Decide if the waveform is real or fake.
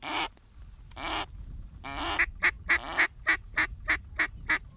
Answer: real